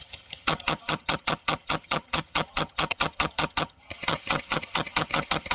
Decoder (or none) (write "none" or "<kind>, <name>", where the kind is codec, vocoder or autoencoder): vocoder, HiFi-GAN